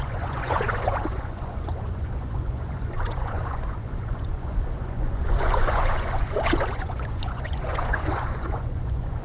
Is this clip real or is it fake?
fake